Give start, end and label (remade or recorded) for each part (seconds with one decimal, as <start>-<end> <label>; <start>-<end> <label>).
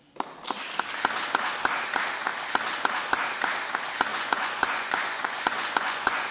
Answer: 0.0-4.1 recorded; 4.1-6.3 remade